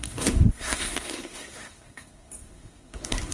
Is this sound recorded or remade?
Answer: remade